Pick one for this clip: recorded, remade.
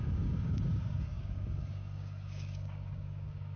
remade